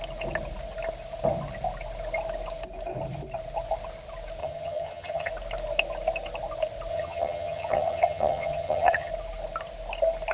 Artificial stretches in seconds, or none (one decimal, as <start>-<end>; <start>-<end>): 4.4-5.3; 6.9-9.1